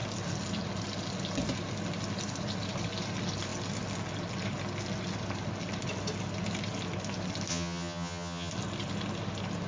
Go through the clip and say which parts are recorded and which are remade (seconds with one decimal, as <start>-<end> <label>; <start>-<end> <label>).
0.0-7.5 recorded; 7.5-8.5 remade; 8.5-9.7 recorded